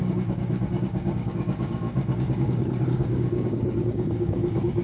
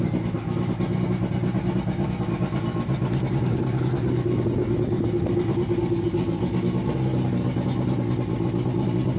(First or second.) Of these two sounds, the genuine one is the second